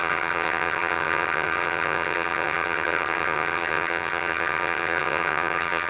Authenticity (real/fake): fake